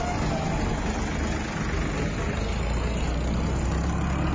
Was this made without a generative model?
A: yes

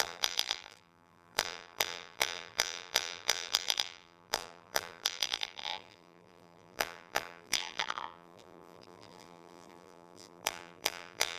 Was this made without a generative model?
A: no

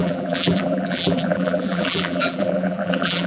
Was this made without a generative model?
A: no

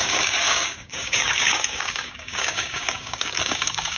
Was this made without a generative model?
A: no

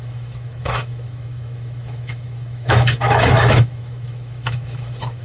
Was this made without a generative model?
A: no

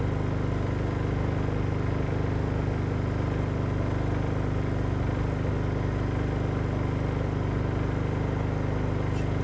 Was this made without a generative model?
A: yes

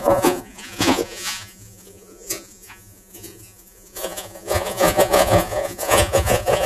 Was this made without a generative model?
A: no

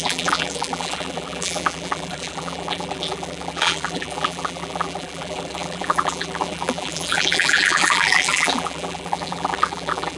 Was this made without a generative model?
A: no